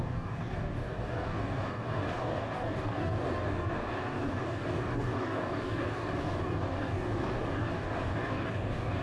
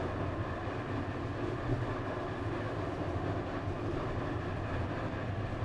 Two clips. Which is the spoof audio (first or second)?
first